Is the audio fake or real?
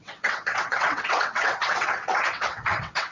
fake